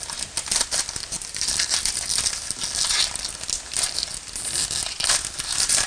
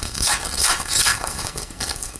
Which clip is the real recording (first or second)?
first